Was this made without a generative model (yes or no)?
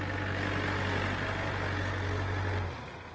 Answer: yes